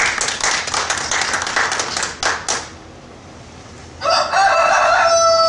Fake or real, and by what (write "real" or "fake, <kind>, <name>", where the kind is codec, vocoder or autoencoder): real